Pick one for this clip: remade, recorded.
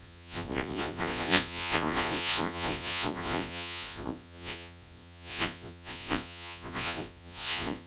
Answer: remade